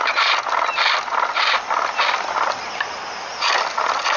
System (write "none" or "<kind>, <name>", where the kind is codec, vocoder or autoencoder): none